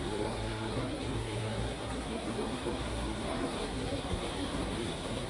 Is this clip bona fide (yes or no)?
no